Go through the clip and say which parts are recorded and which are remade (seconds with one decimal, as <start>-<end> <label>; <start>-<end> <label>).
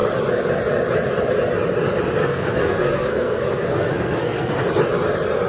0.0-2.2 recorded; 2.2-4.5 remade; 4.5-5.5 recorded